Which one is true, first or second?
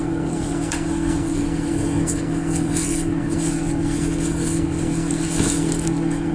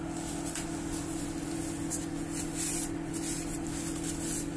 second